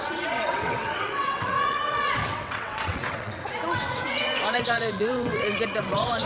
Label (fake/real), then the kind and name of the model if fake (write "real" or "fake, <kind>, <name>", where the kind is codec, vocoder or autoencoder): fake, vocoder, WaveNeXt